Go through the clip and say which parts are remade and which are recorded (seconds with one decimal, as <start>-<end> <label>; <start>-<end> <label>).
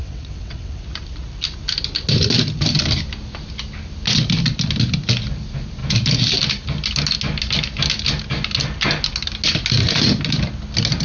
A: 0.0-0.8 remade; 0.8-11.0 recorded